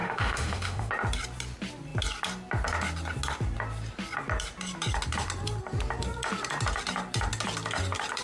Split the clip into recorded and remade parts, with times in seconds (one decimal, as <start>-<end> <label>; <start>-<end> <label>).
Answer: 0.0-0.9 remade; 0.9-8.2 recorded